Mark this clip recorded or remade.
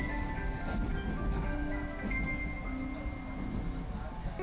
recorded